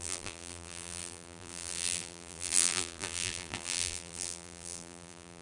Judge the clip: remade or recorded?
remade